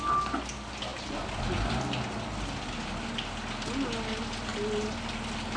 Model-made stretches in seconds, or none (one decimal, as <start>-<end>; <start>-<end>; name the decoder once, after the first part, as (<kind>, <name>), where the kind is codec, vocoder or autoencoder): none